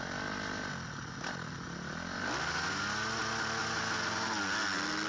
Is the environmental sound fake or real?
real